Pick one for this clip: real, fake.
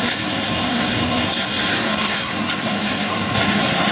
fake